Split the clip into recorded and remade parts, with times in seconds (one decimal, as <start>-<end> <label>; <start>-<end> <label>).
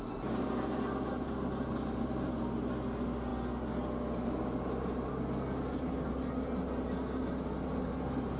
0.0-8.4 recorded